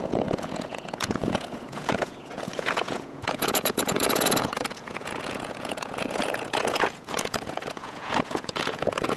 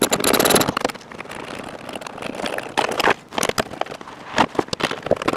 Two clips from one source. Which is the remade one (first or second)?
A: first